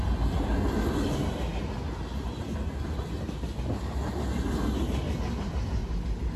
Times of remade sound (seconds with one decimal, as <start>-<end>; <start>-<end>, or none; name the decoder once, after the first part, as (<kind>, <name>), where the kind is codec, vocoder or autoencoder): 5.8-6.4 (vocoder, BigVGAN v2)